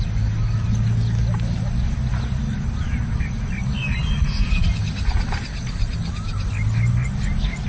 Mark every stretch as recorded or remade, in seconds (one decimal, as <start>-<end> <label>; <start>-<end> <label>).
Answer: 0.0-7.7 recorded